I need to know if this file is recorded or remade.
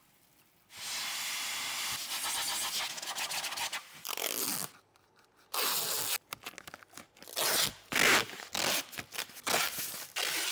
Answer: recorded